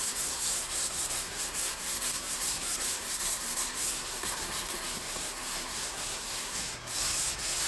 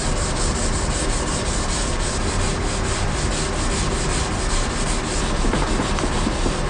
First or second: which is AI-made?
first